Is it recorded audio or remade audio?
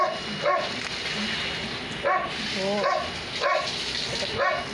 recorded